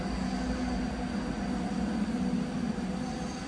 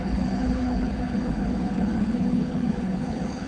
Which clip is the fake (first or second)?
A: second